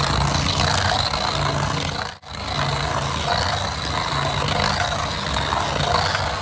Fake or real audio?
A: real